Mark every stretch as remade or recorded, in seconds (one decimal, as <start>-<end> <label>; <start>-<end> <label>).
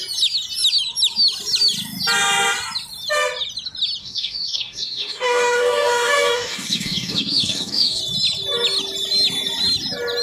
0.0-4.0 recorded; 4.0-8.0 remade; 8.0-10.2 recorded